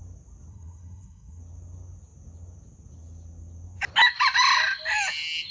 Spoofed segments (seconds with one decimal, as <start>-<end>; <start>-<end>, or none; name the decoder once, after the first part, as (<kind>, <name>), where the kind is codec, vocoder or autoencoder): 0.5-1.4 (codec, SNAC)